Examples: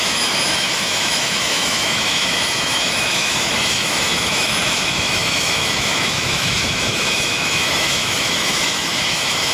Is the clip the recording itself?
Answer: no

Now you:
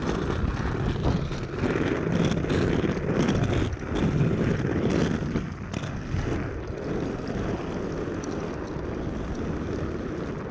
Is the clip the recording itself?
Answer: yes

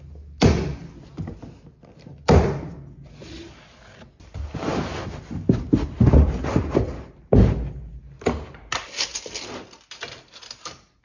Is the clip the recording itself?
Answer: yes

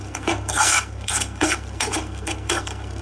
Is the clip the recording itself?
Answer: no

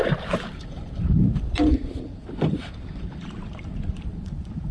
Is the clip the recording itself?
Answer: no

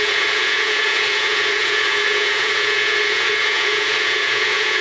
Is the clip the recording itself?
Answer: no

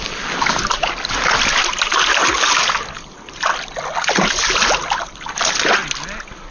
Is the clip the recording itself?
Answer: yes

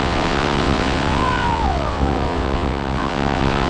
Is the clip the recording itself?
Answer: no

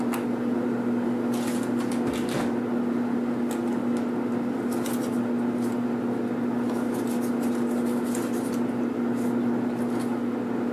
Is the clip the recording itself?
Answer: yes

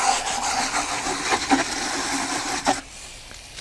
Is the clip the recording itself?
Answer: yes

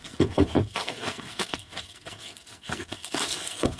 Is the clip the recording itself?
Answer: no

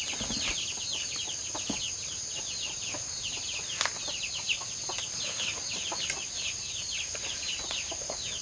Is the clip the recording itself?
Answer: yes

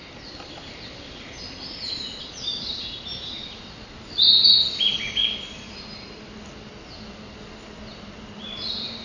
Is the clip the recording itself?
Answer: yes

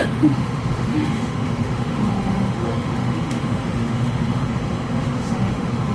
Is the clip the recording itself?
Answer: no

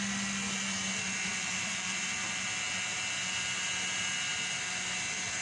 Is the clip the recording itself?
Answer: yes